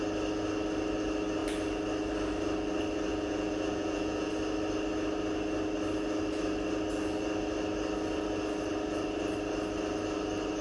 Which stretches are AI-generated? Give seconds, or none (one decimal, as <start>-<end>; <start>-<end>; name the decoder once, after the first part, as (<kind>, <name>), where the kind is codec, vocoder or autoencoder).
3.1-4.3 (vocoder, Vocos)